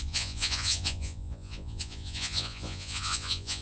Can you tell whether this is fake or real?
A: fake